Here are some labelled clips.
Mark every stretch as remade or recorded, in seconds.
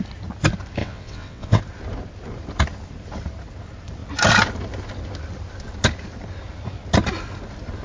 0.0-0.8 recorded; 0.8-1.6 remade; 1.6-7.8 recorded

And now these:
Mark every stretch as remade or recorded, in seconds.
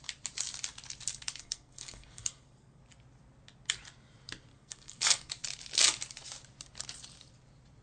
0.0-1.4 recorded; 1.4-2.8 remade; 2.8-4.5 recorded; 4.5-5.3 remade; 5.3-7.8 recorded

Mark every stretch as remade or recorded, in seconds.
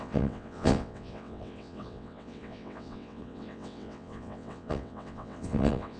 0.0-6.0 remade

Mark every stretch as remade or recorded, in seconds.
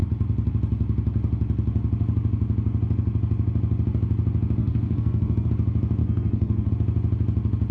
0.0-4.6 recorded; 4.6-5.5 remade; 5.5-6.0 recorded; 6.0-6.7 remade; 6.7-7.7 recorded